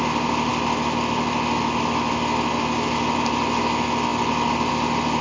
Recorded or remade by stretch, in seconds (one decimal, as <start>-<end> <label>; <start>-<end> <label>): 0.0-5.2 recorded